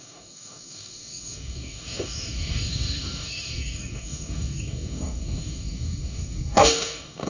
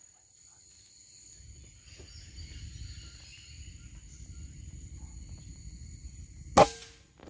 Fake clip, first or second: first